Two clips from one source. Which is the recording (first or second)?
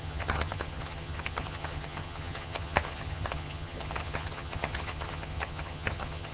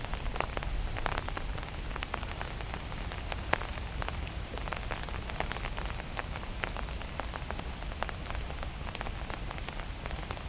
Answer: second